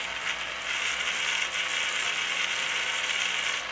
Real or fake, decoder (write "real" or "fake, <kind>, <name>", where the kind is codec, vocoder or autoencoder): real